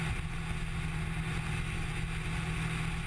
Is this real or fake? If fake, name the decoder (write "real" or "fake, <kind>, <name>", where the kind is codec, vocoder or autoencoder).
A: real